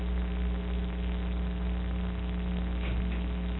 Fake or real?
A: real